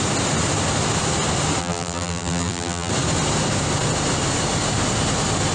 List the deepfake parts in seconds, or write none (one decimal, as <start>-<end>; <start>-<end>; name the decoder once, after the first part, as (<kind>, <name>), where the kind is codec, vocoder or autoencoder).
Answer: 1.6-2.9 (vocoder, BigVGAN v2)